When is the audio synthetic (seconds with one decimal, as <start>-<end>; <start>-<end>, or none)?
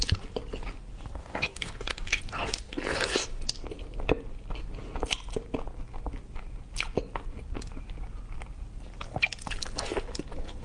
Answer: 1.2-2.2